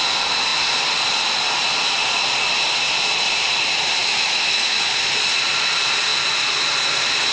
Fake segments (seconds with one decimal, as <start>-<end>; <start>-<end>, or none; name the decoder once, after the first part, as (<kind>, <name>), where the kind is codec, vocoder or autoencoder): 4.0-4.9 (autoencoder, DAC-VAE)